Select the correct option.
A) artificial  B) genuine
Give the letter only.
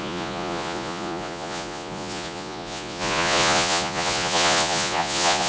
A